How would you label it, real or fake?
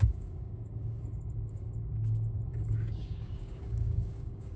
fake